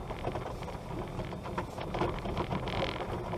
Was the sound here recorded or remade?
recorded